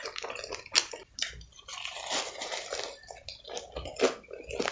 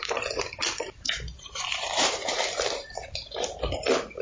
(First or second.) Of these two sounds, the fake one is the second